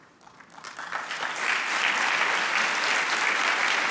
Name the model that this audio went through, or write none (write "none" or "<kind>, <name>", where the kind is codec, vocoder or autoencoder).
none